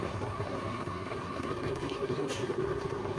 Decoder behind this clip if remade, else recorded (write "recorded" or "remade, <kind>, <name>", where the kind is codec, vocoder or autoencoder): remade, codec, SNAC